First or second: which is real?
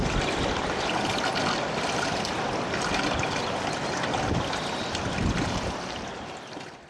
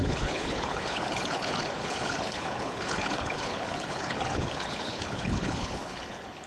first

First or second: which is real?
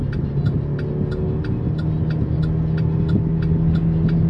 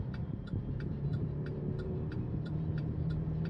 first